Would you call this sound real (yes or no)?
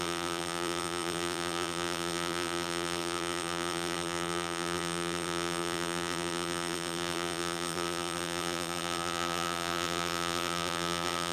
no